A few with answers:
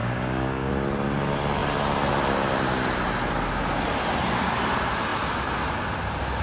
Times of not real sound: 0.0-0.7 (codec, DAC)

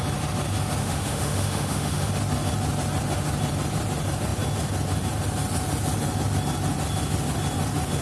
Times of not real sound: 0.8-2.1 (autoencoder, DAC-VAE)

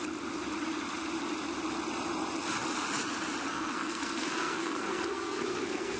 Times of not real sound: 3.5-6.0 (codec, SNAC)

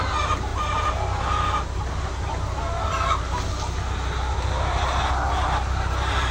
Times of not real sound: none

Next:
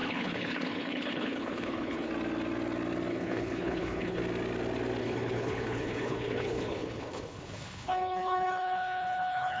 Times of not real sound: 0.0-2.1 (codec, HILCodec); 3.1-4.2; 5.0-9.6

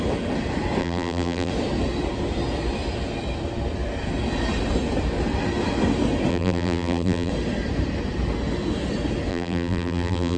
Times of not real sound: 0.8-1.5 (vocoder, BigVGAN v2); 6.3-7.3; 9.3-10.4

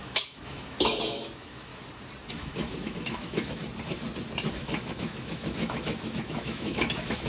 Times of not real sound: 0.0-1.7 (autoencoder, DAC-VAE); 2.3-3.6; 4.5-7.3

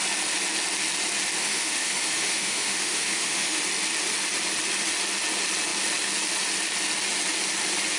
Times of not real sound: 1.4-3.6 (autoencoder, DAC-VAE)